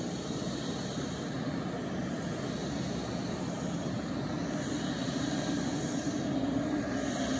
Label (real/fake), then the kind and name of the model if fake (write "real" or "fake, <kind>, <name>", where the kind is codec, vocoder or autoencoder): real